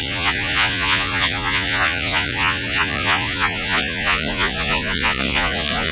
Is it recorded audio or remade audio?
remade